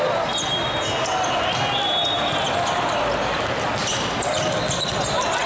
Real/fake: real